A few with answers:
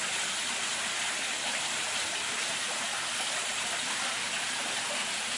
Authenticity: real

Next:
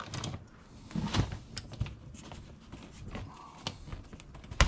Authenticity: real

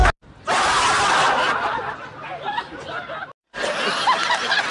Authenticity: real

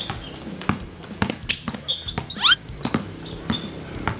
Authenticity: real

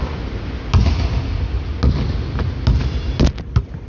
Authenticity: real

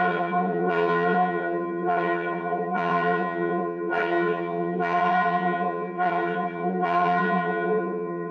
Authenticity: fake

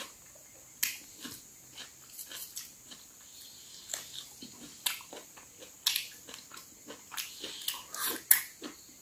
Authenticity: real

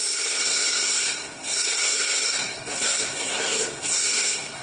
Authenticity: fake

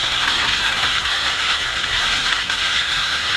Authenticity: fake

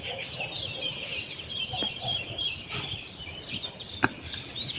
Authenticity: fake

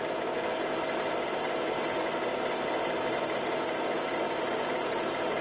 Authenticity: real